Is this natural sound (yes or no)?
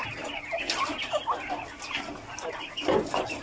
yes